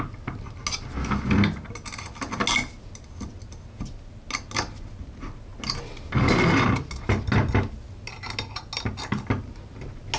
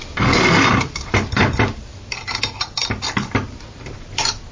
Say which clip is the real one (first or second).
first